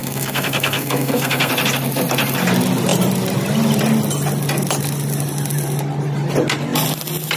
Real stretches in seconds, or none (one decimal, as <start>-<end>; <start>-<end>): 1.5-7.4